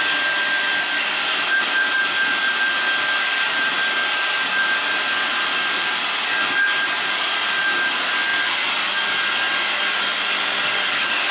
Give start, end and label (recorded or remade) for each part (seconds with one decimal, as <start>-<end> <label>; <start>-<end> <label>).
0.0-11.3 recorded